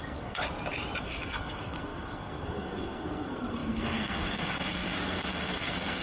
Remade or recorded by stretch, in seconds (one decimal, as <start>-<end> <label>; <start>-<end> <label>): 0.0-0.4 remade; 0.4-1.0 recorded; 1.0-6.0 remade

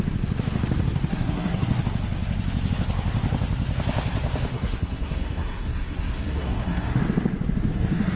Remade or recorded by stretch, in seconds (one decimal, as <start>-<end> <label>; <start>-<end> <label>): 0.0-1.1 recorded; 1.1-1.8 remade; 1.8-4.5 recorded; 4.5-7.0 remade; 7.0-7.7 recorded; 7.7-8.2 remade

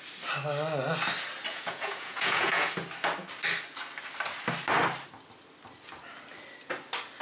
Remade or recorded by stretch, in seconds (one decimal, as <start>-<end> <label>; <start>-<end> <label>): 0.0-1.5 recorded; 1.5-2.7 remade; 2.7-7.2 recorded

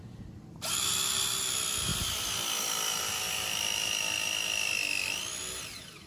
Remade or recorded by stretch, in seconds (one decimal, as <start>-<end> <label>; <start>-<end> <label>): 0.0-6.1 recorded

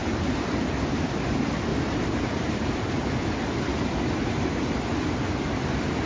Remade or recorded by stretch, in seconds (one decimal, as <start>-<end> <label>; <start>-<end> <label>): 0.0-0.7 remade; 0.7-1.7 recorded; 1.7-3.2 remade; 3.2-6.1 recorded

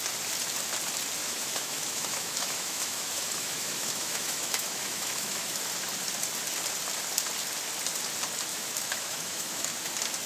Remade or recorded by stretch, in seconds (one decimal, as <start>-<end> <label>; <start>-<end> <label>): 0.0-1.2 recorded; 1.2-5.6 remade; 5.6-8.5 recorded; 8.5-9.7 remade; 9.7-10.3 recorded

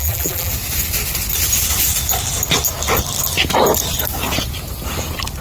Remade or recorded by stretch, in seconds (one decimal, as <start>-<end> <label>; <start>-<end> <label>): 0.0-0.5 remade; 0.5-5.4 recorded

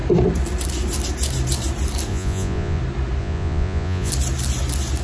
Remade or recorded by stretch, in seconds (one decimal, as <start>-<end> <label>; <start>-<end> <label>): 0.0-2.1 recorded; 2.1-2.8 remade; 2.8-3.2 recorded; 3.2-4.1 remade; 4.1-5.0 recorded